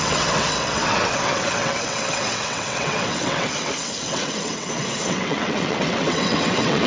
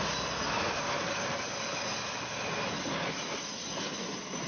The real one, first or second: second